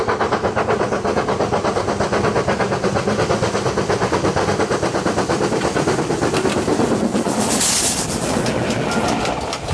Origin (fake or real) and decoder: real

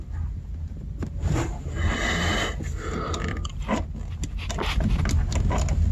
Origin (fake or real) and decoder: real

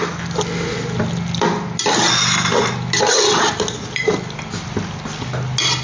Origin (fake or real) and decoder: real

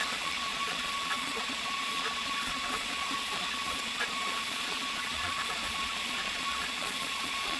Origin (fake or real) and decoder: fake, vocoder, Vocos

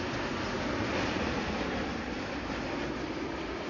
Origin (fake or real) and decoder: real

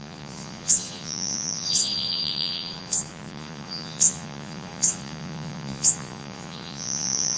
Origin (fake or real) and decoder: fake, vocoder, Vocos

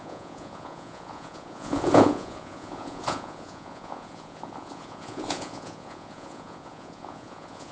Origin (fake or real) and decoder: fake, vocoder, Vocos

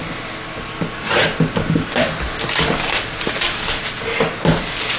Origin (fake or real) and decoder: real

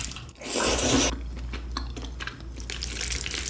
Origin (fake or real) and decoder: real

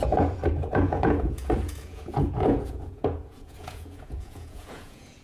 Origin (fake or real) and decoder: fake, vocoder, Vocos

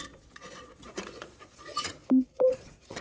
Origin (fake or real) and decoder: fake, vocoder, Vocos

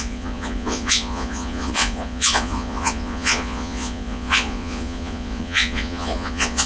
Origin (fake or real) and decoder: fake, vocoder, Vocos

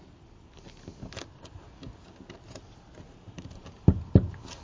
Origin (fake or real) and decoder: real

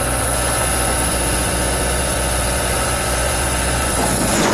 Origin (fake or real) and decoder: fake, vocoder, Vocos